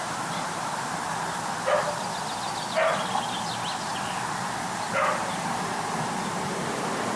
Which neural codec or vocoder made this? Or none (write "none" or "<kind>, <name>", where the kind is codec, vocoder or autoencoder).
none